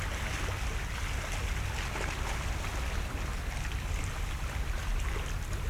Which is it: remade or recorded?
recorded